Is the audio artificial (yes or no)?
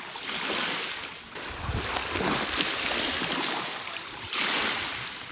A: no